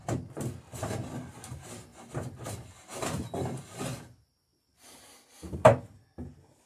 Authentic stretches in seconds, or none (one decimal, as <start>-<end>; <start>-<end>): 0.0-6.7